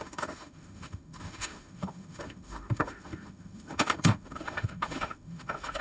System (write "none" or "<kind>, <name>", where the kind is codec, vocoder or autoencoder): autoencoder, DAC-VAE